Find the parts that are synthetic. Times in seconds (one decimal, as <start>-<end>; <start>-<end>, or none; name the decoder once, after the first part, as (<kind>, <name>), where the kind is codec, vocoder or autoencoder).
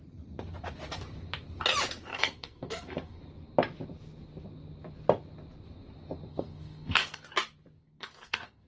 2.1-3.2 (codec, SNAC); 6.3-7.2; 7.8-8.7